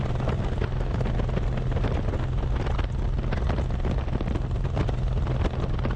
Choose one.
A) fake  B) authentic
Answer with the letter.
B